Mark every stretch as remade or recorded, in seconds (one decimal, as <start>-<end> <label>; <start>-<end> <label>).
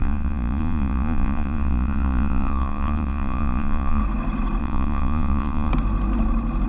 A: 0.0-4.0 remade; 4.0-4.6 recorded; 4.6-5.7 remade; 5.7-6.7 recorded